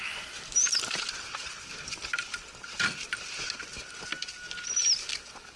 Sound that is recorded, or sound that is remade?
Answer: recorded